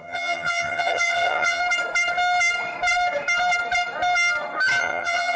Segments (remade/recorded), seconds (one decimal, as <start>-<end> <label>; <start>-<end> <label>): 0.0-1.6 remade; 1.6-4.8 recorded; 4.8-5.4 remade

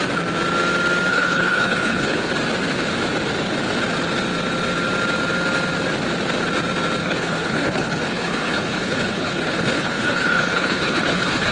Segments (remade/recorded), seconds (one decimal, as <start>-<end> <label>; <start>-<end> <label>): 0.0-1.1 recorded; 1.1-2.3 remade; 2.3-7.0 recorded; 7.0-11.5 remade

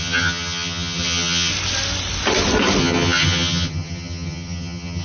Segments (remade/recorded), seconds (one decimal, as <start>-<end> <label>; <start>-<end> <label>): 0.0-1.5 remade; 1.5-2.8 recorded; 2.8-5.0 remade

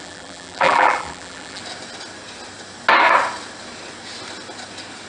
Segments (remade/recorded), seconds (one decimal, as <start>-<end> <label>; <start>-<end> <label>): 0.0-1.6 remade; 1.6-5.1 recorded

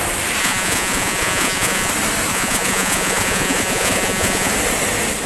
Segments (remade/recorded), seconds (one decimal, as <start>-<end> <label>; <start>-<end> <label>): 0.0-0.4 recorded; 0.4-1.9 remade; 1.9-2.3 recorded; 2.3-4.5 remade; 4.5-5.3 recorded

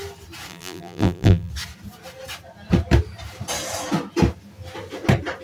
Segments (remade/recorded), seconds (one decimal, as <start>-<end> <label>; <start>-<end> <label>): 0.0-0.5 recorded; 0.5-1.5 remade; 1.5-5.4 recorded